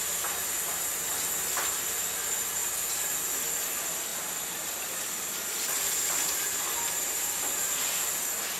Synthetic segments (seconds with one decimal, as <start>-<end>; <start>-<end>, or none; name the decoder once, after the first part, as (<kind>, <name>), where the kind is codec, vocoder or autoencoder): 0.0-1.1 (vocoder, BigVGAN v2); 4.1-8.1

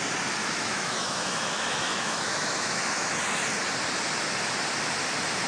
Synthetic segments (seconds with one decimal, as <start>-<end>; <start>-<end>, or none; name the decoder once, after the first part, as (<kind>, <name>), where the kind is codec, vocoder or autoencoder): 0.4-3.2 (autoencoder, DAC-VAE)

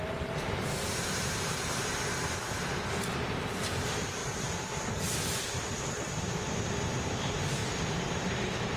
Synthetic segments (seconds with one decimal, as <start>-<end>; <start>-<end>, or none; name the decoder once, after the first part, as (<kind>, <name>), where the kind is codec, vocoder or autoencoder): 0.0-8.8 (vocoder, BigVGAN v2)

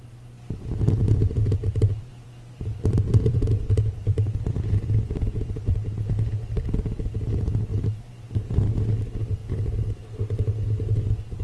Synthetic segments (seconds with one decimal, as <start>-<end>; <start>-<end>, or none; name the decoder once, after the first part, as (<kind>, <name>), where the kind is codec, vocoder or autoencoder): 1.6-5.2 (vocoder, BigVGAN v2)

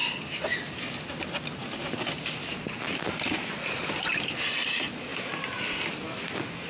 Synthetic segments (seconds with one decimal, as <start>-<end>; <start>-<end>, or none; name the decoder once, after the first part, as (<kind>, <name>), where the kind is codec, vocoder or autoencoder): none

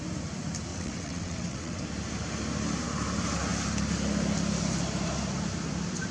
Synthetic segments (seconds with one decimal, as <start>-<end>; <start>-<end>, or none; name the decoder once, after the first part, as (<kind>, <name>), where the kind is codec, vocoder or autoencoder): 0.7-1.8 (vocoder, WaveNeXt)

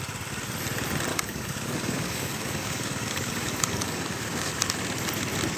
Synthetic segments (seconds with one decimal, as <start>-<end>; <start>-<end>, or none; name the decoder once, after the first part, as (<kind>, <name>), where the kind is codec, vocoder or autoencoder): 1.1-4.5 (codec, DAC)

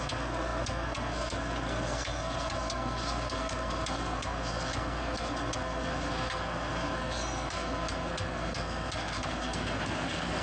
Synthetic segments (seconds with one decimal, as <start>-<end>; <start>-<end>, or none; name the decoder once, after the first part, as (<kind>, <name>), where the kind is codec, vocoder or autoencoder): 0.0-10.4 (codec, SNAC)